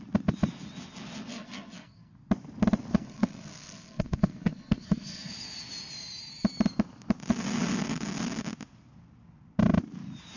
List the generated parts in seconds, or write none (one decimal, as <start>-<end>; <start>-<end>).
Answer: 1.3-2.1; 2.9-5.3